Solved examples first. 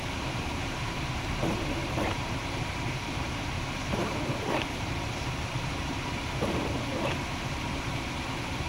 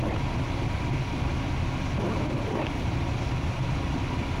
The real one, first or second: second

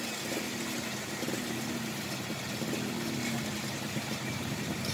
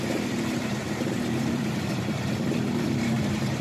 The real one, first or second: first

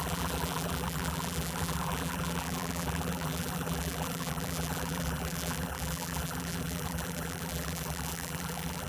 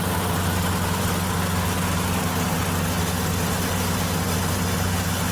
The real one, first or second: second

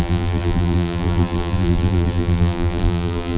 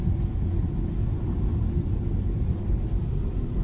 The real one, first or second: second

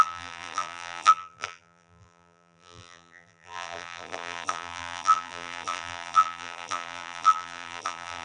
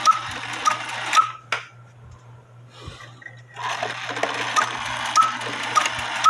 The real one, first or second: second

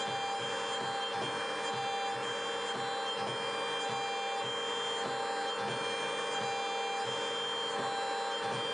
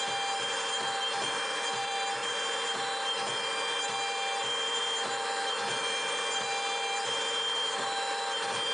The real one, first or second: first